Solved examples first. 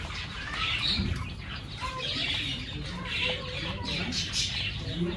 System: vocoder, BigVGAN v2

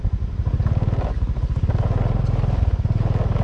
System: none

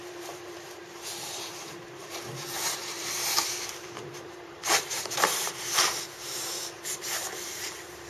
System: vocoder, BigVGAN v2